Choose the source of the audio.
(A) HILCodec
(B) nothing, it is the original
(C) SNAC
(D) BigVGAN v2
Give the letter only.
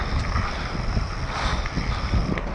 B